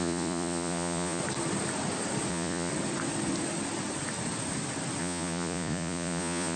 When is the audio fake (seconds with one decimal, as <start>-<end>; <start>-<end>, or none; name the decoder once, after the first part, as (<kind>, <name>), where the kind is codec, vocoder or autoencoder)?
0.0-1.2 (vocoder, Vocos); 2.3-2.7; 5.0-6.6